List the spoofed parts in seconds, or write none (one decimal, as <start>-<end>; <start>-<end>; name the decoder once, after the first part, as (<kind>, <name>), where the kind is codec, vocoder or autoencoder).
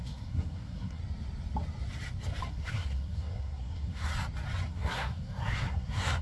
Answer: 0.0-1.0 (codec, SNAC); 2.5-4.1; 4.7-6.2